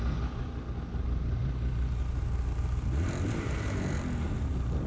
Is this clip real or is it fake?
real